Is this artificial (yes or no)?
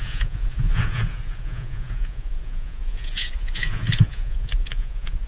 yes